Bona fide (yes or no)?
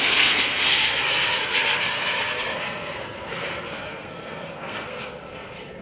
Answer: no